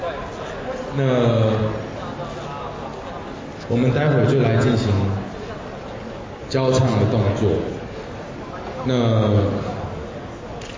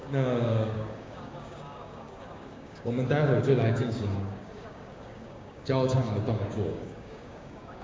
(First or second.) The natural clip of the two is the first